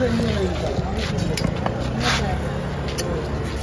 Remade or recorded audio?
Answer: recorded